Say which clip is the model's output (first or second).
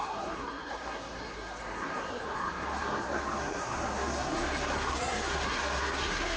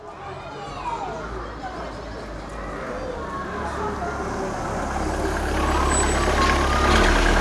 first